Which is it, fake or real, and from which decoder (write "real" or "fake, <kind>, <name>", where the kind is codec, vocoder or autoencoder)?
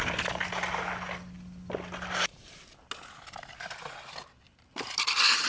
real